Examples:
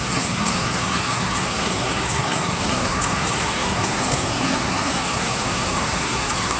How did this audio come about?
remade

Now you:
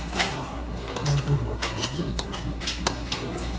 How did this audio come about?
remade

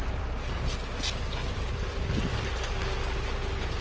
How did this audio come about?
recorded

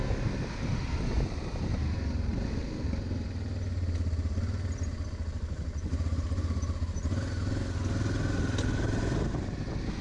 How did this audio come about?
recorded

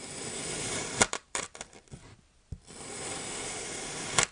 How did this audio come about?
remade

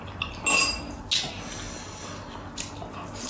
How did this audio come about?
recorded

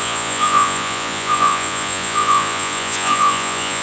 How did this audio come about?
remade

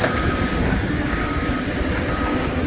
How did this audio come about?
remade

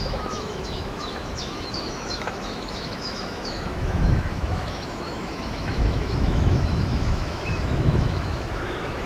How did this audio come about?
remade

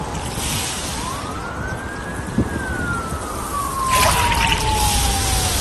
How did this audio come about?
recorded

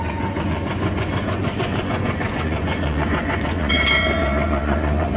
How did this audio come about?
remade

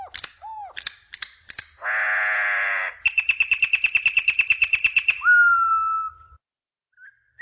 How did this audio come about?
recorded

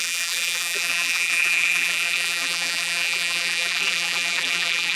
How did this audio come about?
remade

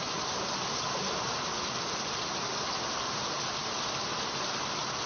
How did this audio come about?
recorded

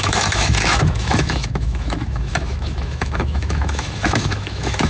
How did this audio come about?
remade